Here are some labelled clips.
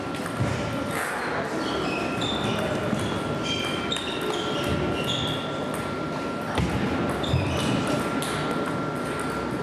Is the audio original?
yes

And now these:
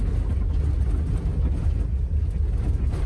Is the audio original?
yes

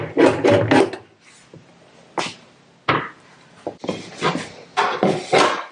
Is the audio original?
yes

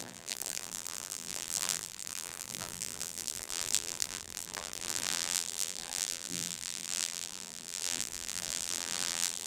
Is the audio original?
no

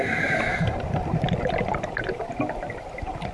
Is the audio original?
yes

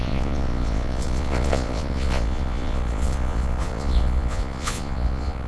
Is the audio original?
no